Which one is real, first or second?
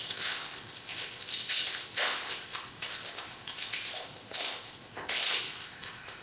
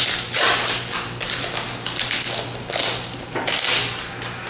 second